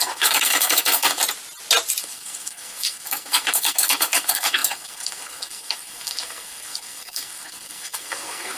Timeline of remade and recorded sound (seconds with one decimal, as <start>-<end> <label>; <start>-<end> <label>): 0.0-1.2 remade; 1.2-2.0 recorded; 2.0-8.6 remade